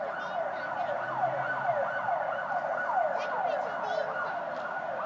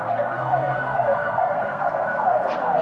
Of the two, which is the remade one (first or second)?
second